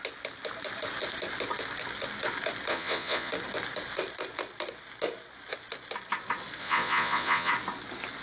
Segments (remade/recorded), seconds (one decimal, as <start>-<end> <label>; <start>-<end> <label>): 0.0-2.7 recorded; 2.7-3.3 remade; 3.3-6.6 recorded; 6.6-7.5 remade; 7.5-8.2 recorded